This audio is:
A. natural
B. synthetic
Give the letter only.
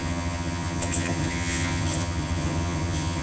B